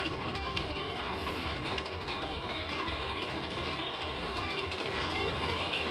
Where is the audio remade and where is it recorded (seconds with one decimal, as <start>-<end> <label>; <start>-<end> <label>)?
0.0-5.9 remade